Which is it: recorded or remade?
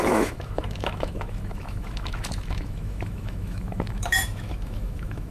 remade